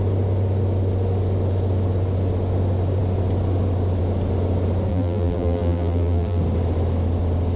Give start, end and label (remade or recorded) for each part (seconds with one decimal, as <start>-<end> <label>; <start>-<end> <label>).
0.0-4.9 recorded; 4.9-6.4 remade; 6.4-7.6 recorded